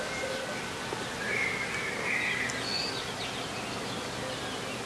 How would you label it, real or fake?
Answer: real